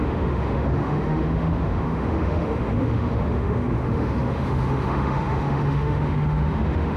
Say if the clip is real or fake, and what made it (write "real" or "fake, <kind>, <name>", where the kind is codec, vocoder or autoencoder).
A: fake, autoencoder, DAC-VAE